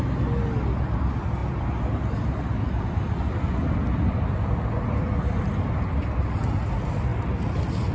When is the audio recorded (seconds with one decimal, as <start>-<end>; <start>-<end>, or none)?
0.0-7.9